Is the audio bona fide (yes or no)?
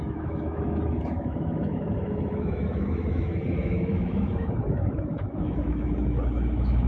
no